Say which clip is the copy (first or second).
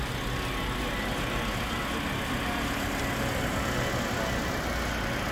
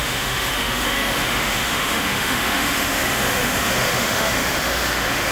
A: second